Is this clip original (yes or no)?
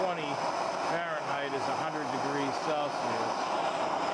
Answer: yes